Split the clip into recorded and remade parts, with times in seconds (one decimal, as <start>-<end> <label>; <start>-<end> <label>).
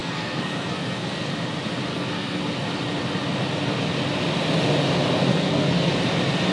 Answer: 0.0-1.3 remade; 1.3-1.9 recorded; 1.9-2.4 remade; 2.4-5.3 recorded; 5.3-5.9 remade; 5.9-6.5 recorded